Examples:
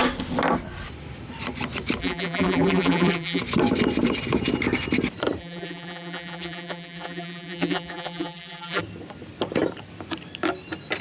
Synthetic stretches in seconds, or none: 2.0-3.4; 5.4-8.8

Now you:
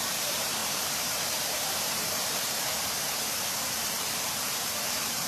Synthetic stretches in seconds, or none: 0.0-5.3

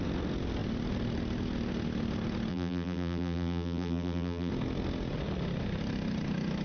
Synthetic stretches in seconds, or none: 2.5-4.5

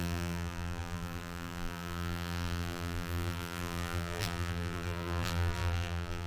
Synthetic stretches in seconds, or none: 0.0-6.3

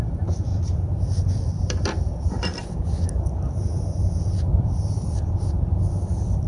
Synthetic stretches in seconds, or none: 0.0-0.5; 1.5-2.5; 4.3-6.5